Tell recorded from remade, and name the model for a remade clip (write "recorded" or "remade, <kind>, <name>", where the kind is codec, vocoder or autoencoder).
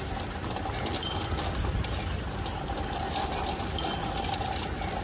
recorded